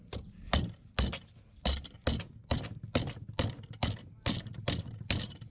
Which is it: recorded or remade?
recorded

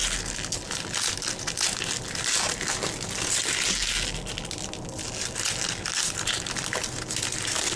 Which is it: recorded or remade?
recorded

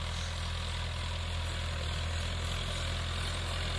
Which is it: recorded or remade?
recorded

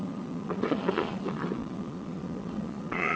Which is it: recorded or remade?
remade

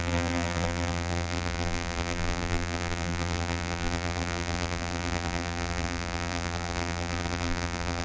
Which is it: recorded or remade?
remade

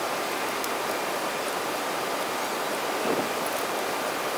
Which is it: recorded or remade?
recorded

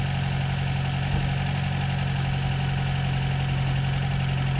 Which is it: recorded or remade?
recorded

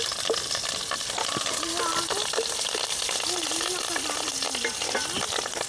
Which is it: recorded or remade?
recorded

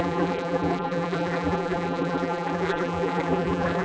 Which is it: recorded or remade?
remade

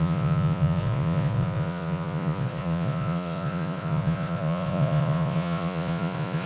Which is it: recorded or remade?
remade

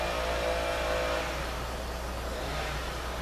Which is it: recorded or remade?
recorded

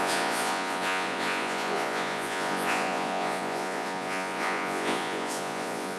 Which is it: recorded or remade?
remade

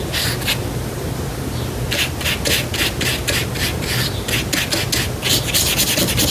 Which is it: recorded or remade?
recorded